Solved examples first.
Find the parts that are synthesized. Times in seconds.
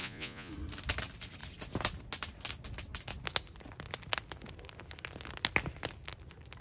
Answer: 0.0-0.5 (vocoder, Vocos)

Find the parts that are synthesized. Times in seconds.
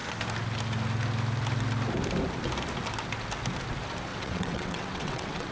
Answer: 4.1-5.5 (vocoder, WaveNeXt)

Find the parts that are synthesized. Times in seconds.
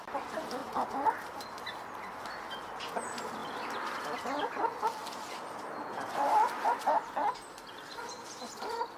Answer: 5.0-9.0 (vocoder, BigVGAN v2)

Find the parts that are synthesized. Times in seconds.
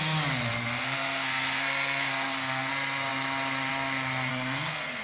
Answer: 0.5-2.7 (codec, SNAC); 4.3-5.0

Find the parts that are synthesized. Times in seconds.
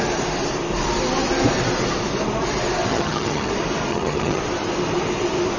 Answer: 2.9-3.5 (vocoder, HiFi-GAN); 3.9-4.4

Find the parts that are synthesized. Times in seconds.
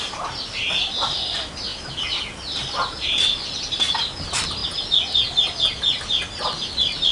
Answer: none